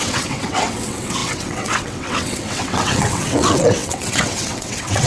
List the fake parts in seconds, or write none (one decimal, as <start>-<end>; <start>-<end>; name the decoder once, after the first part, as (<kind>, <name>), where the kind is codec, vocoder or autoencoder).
0.0-5.1 (vocoder, WaveNeXt)